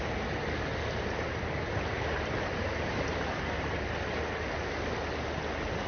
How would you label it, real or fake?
real